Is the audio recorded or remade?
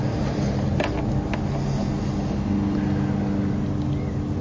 recorded